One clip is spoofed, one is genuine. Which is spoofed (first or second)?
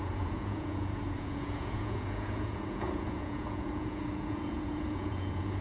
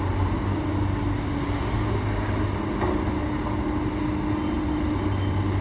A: first